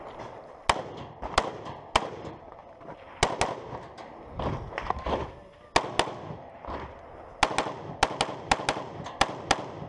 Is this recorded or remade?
recorded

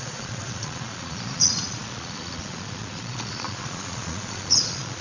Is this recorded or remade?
remade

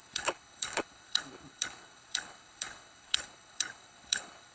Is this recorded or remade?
remade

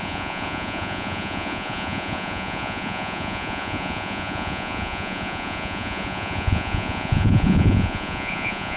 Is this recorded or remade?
remade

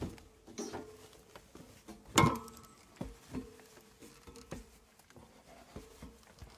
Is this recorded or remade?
recorded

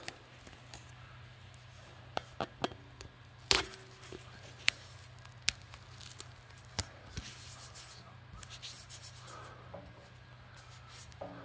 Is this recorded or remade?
recorded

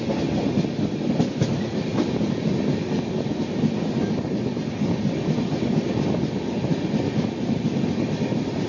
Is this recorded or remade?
recorded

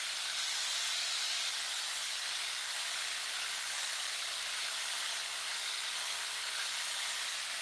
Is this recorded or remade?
recorded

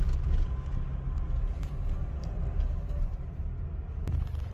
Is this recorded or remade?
recorded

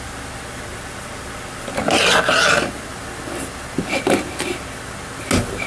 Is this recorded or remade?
recorded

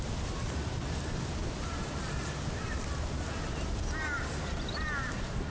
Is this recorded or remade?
recorded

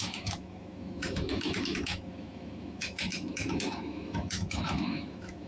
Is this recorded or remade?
remade